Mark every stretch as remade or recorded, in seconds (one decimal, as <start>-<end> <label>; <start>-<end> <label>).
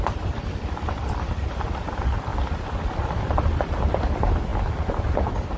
0.0-5.6 recorded